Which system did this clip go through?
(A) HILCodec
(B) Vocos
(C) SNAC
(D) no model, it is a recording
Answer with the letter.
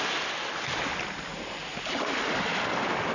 D